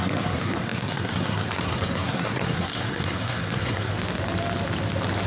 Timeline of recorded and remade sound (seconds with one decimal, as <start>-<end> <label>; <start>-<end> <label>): 0.0-3.9 remade; 3.9-5.3 recorded